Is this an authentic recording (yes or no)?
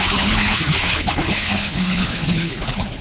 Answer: no